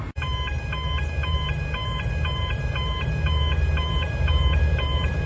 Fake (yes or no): yes